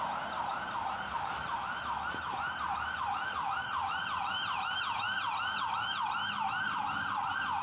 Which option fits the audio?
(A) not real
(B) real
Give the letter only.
B